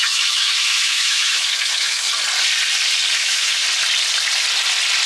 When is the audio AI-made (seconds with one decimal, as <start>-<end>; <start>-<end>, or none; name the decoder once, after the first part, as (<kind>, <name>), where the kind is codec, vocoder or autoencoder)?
0.0-2.1 (autoencoder, DAC-VAE); 3.2-3.6